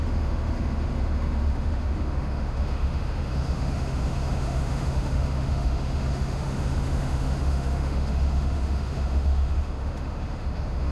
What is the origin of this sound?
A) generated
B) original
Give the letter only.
A